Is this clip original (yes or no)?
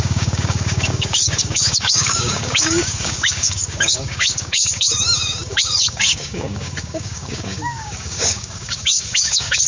no